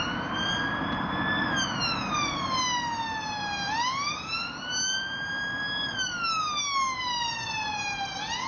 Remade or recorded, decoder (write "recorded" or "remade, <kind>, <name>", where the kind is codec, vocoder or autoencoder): recorded